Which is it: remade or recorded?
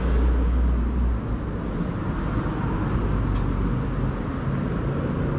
recorded